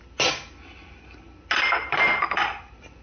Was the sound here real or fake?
real